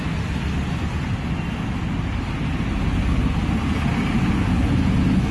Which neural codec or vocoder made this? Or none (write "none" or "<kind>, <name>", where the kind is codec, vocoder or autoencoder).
none